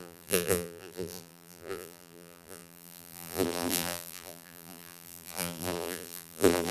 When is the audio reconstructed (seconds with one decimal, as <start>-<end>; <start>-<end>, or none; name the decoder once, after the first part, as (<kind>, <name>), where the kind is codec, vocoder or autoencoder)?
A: 0.0-6.7 (vocoder, BigVGAN v2)